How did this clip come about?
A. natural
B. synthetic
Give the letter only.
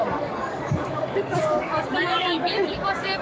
B